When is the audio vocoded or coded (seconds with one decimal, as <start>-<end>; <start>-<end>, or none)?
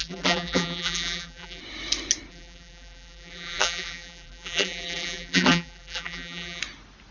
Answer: 0.0-1.6; 2.3-6.6